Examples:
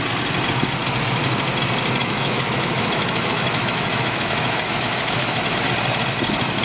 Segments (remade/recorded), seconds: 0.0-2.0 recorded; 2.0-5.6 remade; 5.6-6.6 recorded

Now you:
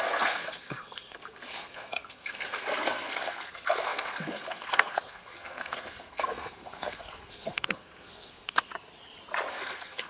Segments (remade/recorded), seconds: 0.0-8.7 remade; 8.7-9.5 recorded; 9.5-10.1 remade

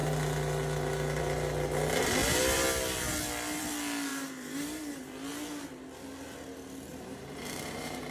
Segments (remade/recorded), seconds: 0.0-4.1 recorded; 4.1-5.1 remade; 5.1-6.9 recorded; 6.9-8.1 remade

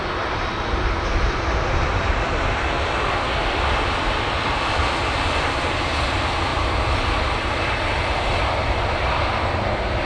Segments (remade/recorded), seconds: 0.0-10.1 recorded

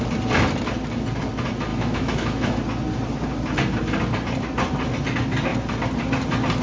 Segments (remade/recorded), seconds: 0.0-1.7 recorded; 1.7-2.6 remade; 2.6-6.6 recorded

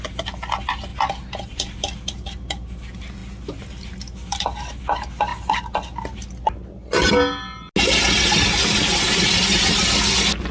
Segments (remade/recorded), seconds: 0.0-10.5 recorded

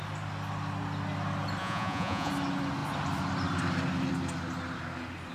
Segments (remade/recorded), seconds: 0.0-1.6 recorded; 1.6-2.3 remade; 2.3-5.3 recorded